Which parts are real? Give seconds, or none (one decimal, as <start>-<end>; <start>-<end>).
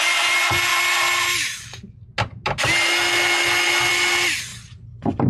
0.0-5.3